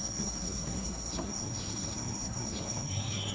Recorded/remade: remade